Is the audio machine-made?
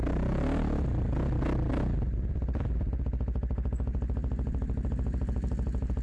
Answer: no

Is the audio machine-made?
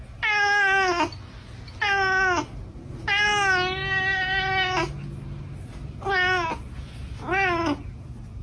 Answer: no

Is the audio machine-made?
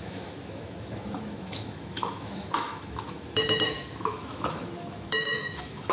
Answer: yes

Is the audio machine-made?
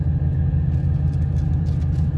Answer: no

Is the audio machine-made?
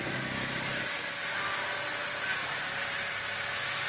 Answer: no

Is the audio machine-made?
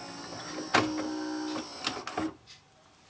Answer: no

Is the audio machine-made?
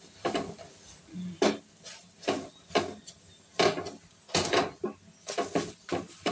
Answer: no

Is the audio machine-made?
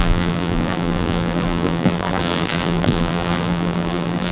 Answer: yes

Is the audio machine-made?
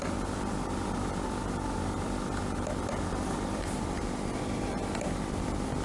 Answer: yes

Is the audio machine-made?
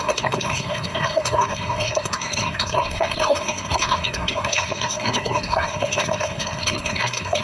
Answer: yes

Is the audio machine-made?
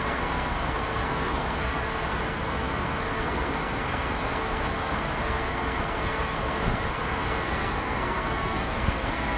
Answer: yes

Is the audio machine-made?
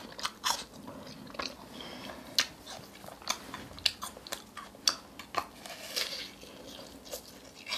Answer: no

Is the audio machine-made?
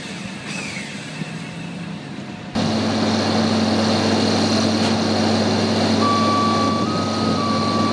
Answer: no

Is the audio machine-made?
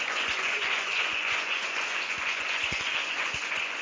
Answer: yes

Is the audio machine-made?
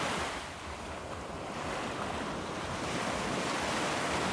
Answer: no